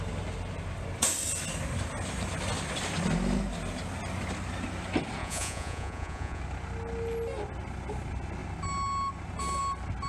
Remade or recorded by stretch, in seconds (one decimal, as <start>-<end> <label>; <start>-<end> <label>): 0.0-5.2 recorded; 5.2-6.4 remade; 6.4-10.1 recorded